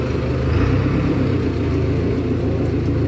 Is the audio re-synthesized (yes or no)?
no